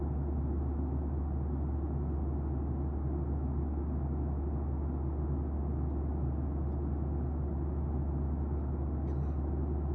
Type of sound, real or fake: real